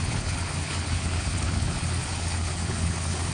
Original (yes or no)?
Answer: no